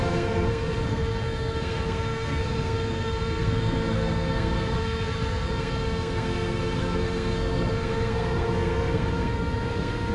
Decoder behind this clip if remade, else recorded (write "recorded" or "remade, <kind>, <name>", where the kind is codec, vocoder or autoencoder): remade, codec, SNAC